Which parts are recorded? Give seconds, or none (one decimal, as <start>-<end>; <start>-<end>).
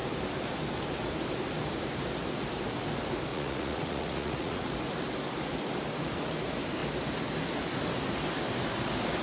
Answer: 0.0-3.3; 4.7-9.2